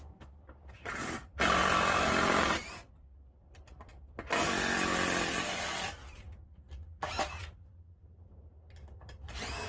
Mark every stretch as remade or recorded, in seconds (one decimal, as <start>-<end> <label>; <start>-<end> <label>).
0.0-3.9 remade; 3.9-7.0 recorded; 7.0-9.7 remade